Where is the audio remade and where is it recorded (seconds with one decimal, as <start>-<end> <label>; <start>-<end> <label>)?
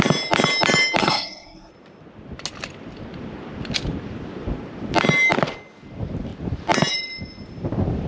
0.0-1.0 recorded; 1.0-1.7 remade; 1.7-8.1 recorded